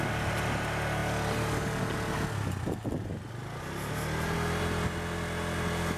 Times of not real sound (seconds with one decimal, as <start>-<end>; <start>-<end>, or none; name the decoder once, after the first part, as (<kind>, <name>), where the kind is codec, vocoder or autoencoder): none